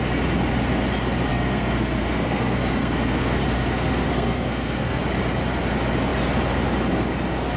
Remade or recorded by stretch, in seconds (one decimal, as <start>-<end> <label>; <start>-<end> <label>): 0.0-1.3 recorded; 1.3-5.0 remade; 5.0-7.6 recorded

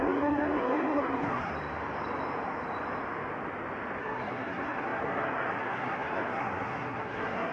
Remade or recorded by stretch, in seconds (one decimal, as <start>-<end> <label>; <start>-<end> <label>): 0.0-1.5 remade; 1.5-4.0 recorded; 4.0-7.5 remade

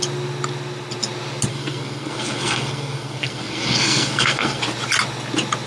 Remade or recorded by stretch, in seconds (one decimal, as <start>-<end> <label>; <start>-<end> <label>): 0.0-1.5 recorded; 1.5-4.6 remade; 4.6-5.7 recorded